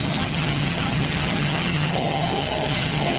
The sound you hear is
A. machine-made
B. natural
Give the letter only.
A